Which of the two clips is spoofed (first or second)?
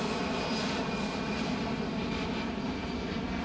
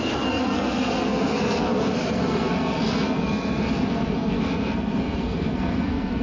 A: second